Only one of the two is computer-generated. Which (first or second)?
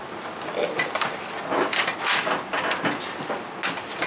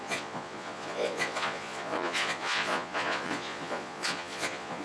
second